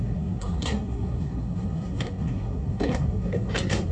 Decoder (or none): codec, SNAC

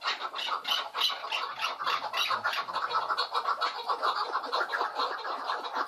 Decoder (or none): none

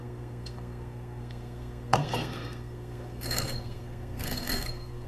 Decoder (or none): codec, SNAC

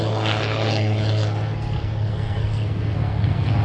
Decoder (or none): codec, SNAC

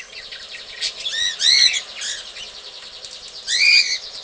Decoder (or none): none